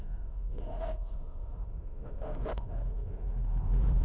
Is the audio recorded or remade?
remade